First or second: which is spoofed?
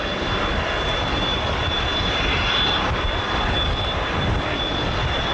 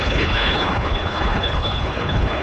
second